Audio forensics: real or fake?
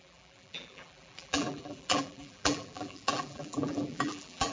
fake